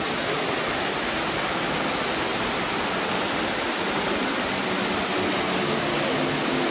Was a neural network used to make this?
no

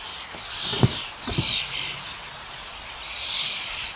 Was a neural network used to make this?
no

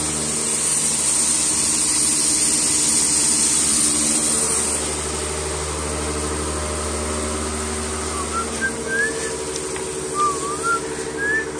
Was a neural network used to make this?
no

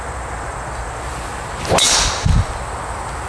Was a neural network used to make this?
no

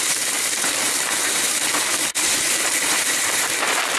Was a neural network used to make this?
yes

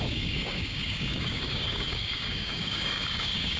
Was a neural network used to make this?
yes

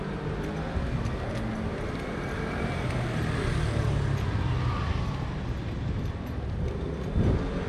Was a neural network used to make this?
no